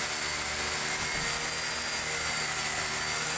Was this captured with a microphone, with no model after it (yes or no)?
yes